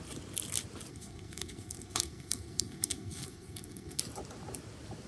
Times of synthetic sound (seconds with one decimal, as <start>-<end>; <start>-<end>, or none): 0.9-4.0